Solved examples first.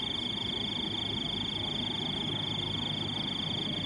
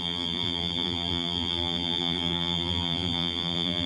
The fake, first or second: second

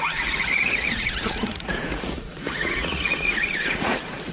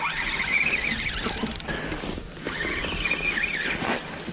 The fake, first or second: first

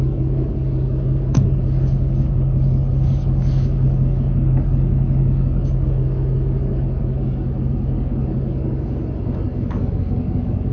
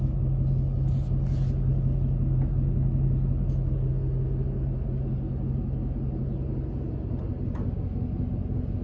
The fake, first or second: first